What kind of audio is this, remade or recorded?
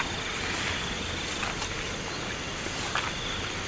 recorded